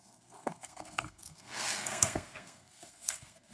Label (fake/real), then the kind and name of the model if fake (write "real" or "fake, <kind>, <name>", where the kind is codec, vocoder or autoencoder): fake, codec, SNAC